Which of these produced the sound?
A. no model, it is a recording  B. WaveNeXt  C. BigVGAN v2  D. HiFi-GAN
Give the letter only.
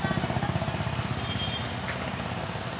A